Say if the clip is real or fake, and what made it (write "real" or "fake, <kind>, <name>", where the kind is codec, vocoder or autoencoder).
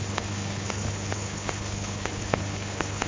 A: fake, codec, HILCodec